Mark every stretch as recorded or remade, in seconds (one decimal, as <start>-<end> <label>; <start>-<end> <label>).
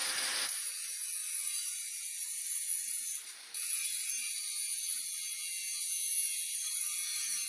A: 0.0-7.5 remade